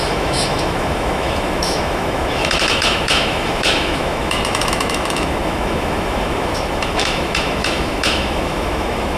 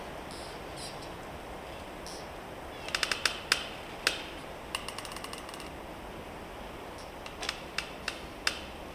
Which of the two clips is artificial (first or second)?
first